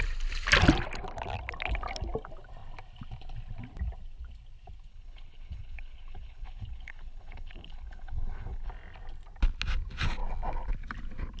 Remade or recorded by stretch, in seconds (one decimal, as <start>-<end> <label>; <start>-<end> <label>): 0.0-4.9 recorded; 4.9-8.7 remade; 8.7-11.4 recorded